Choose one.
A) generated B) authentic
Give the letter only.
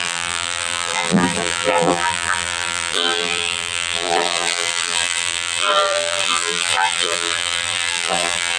A